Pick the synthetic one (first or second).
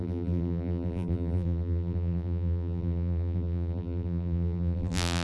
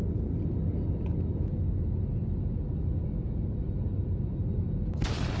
first